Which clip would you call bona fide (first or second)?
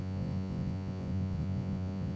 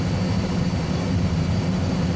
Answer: second